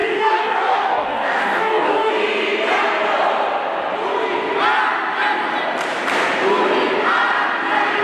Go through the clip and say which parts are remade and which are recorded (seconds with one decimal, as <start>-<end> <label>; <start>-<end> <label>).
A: 0.0-2.1 remade; 2.1-8.0 recorded

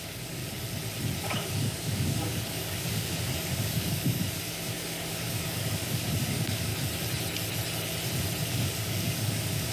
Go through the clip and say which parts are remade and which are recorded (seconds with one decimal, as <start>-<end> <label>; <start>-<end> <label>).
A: 0.0-0.4 remade; 0.4-1.2 recorded; 1.2-6.7 remade; 6.7-8.4 recorded; 8.4-9.7 remade

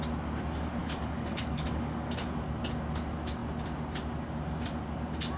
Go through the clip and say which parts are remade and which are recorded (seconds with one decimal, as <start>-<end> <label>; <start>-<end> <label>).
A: 0.0-0.8 recorded; 0.8-2.2 remade; 2.2-5.4 recorded

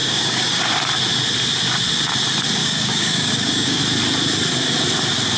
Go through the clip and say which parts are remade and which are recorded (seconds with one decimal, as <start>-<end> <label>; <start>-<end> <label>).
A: 0.0-0.6 remade; 0.6-2.6 recorded; 2.6-3.8 remade; 3.8-5.4 recorded